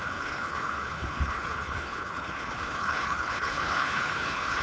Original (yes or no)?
no